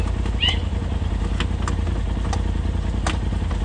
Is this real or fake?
real